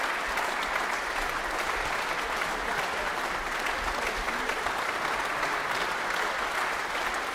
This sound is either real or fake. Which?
real